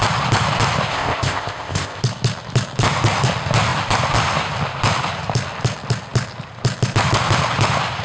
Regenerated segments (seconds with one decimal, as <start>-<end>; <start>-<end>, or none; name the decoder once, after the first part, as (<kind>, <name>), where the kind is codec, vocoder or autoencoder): 0.9-2.0 (codec, ZipCodec)